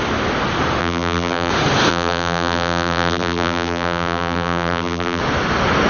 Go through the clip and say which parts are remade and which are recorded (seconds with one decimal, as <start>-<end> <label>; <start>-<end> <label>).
0.0-0.8 recorded; 0.8-1.5 remade; 1.5-1.9 recorded; 1.9-5.2 remade; 5.2-5.9 recorded